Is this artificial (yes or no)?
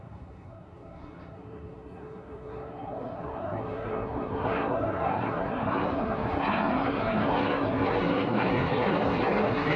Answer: yes